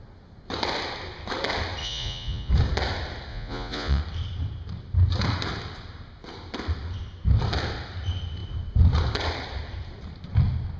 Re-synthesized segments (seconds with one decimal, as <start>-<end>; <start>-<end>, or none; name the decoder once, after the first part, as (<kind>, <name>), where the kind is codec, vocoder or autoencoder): 1.8-2.5 (vocoder, Vocos); 3.3-4.0